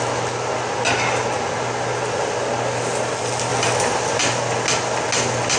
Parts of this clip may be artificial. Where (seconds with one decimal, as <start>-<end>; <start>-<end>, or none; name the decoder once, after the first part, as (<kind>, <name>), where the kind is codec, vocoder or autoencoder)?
none